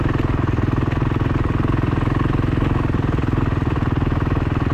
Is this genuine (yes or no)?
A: yes